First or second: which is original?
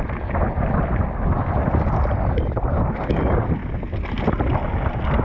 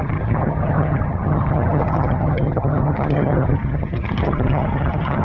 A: first